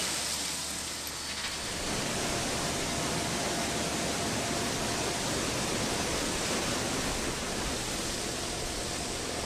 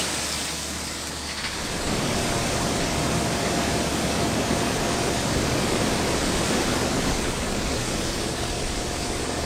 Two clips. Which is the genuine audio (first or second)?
first